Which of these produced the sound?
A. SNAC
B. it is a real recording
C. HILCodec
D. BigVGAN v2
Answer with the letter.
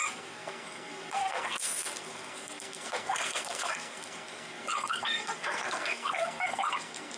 A